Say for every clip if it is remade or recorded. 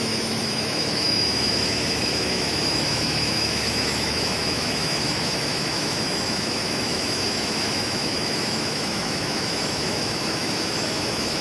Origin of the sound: remade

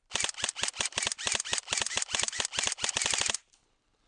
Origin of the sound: recorded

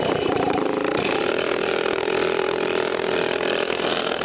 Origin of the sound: remade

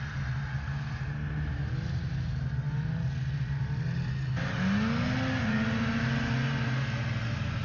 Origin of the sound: recorded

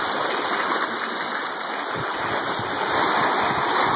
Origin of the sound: recorded